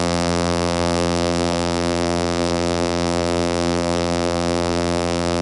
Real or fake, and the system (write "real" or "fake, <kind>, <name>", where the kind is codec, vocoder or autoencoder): fake, vocoder, BigVGAN v2